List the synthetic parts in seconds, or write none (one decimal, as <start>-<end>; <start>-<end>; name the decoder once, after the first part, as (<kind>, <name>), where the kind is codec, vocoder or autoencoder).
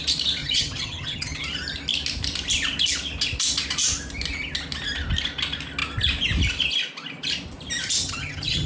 0.4-1.4 (vocoder, HiFi-GAN); 8.0-8.7